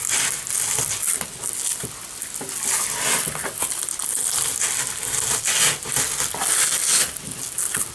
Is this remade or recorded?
recorded